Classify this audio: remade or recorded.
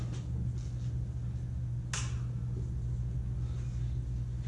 recorded